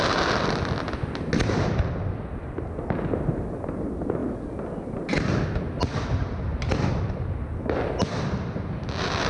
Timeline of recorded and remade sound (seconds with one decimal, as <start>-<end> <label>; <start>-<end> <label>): 0.0-9.3 recorded